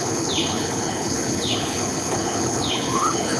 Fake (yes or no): yes